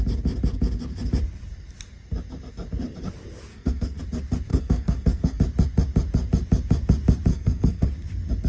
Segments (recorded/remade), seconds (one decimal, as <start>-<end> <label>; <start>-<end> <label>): 0.0-3.5 recorded; 3.5-4.0 remade; 4.0-4.5 recorded; 4.5-5.4 remade; 5.4-7.3 recorded; 7.3-7.9 remade; 7.9-8.5 recorded